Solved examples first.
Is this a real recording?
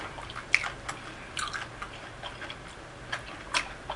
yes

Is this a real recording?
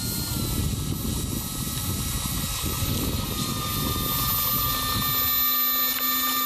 yes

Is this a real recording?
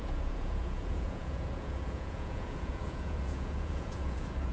no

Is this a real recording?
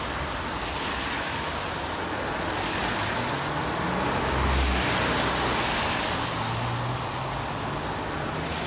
yes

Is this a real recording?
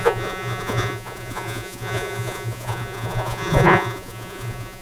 no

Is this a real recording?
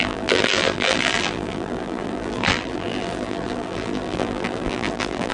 no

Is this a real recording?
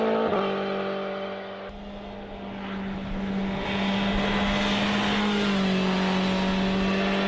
yes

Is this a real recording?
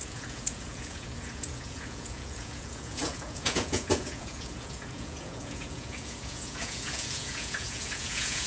no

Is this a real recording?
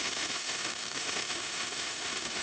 no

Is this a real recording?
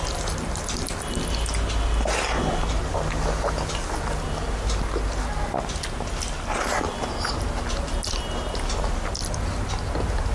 yes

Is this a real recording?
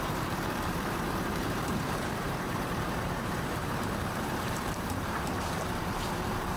no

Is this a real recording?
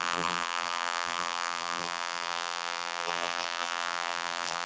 no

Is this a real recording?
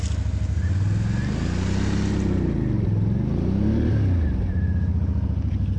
yes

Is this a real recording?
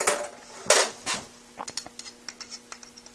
yes